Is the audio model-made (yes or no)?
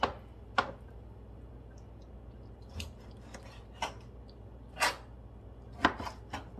no